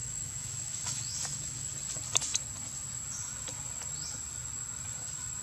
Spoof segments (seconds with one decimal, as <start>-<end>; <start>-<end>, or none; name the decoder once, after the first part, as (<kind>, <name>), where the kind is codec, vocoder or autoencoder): 0.0-1.6 (autoencoder, DAC-VAE)